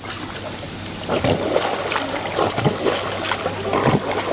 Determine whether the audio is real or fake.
real